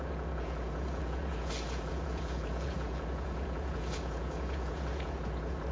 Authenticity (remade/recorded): remade